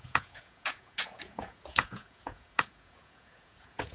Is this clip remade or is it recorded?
remade